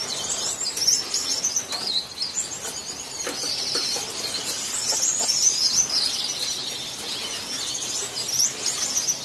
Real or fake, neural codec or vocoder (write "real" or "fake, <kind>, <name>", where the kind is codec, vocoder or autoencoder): real